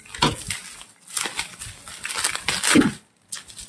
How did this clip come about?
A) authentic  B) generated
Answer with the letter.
A